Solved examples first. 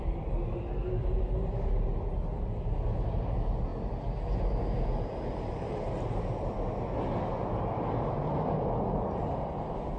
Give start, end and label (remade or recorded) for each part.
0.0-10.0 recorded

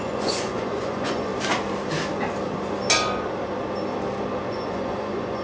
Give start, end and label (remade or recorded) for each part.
0.0-1.3 remade; 1.3-4.5 recorded; 4.5-5.4 remade

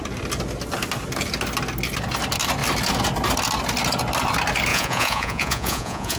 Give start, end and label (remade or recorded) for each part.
0.0-4.7 recorded; 4.7-6.2 remade